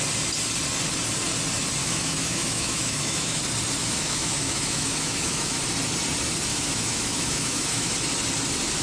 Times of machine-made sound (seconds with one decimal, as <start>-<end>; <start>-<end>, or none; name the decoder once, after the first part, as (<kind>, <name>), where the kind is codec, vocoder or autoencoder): 1.8-3.4 (autoencoder, DAC-VAE); 3.8-5.6; 6.5-7.9